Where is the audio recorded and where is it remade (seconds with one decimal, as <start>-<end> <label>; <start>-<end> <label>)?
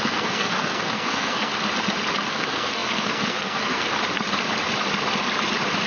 0.0-1.5 remade; 1.5-2.3 recorded; 2.3-3.9 remade; 3.9-5.9 recorded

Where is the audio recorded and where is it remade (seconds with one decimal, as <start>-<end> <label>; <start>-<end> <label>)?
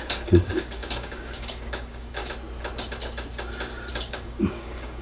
0.0-2.2 remade; 2.2-3.9 recorded; 3.9-5.0 remade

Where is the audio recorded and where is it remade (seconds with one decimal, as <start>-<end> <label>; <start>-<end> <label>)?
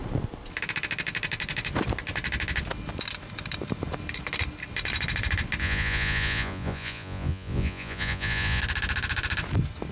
0.0-5.6 recorded; 5.6-8.6 remade; 8.6-9.9 recorded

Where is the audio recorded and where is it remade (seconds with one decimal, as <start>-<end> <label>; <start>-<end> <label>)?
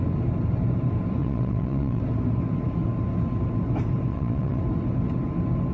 0.0-1.2 recorded; 1.2-2.0 remade; 2.0-4.1 recorded; 4.1-4.6 remade; 4.6-5.7 recorded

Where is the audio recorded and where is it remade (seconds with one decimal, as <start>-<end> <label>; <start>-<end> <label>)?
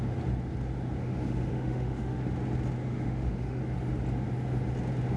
0.0-1.0 recorded; 1.0-2.2 remade; 2.2-2.8 recorded; 2.8-3.6 remade; 3.6-5.2 recorded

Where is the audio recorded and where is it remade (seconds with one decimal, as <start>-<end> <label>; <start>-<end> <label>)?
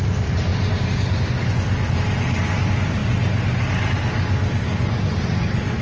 0.0-5.8 recorded